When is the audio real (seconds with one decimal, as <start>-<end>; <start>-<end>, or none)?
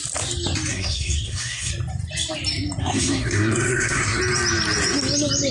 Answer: 0.0-0.7; 1.7-2.8; 4.2-5.5